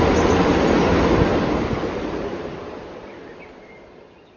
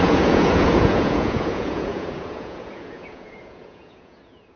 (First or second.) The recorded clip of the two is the first